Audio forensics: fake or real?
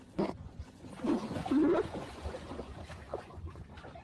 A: fake